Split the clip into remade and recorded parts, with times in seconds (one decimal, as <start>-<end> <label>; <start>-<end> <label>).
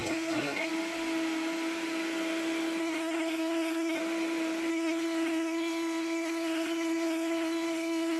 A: 0.0-0.7 remade; 0.7-2.8 recorded; 2.8-4.0 remade; 4.0-4.7 recorded; 4.7-8.2 remade